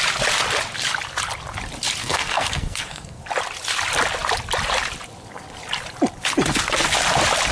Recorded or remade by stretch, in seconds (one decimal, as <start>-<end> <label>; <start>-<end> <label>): 0.0-2.0 recorded; 2.0-3.2 remade; 3.2-7.5 recorded

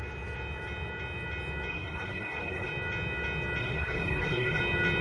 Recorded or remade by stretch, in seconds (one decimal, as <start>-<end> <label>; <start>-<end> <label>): 0.0-1.7 recorded; 1.7-2.7 remade; 2.7-3.6 recorded; 3.6-4.6 remade; 4.6-5.0 recorded